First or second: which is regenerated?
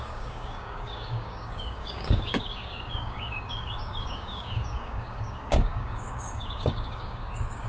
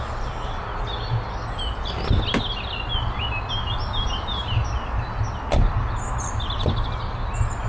first